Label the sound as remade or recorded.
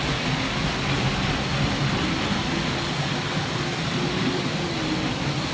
recorded